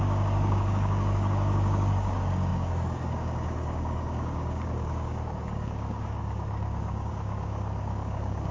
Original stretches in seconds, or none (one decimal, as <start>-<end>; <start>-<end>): none